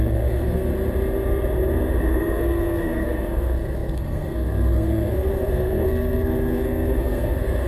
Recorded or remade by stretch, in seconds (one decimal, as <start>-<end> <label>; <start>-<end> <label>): 0.0-0.7 remade; 0.7-2.0 recorded; 2.0-7.7 remade